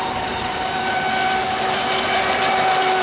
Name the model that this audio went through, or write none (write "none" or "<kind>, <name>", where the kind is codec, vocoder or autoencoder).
none